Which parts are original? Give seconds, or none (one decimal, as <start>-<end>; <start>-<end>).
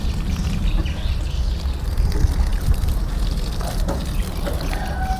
0.0-5.2